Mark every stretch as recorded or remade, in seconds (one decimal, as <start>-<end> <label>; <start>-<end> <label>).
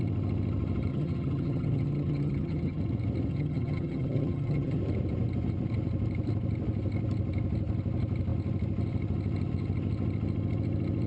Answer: 0.0-0.9 recorded; 0.9-2.8 remade; 2.8-3.3 recorded; 3.3-4.8 remade; 4.8-11.1 recorded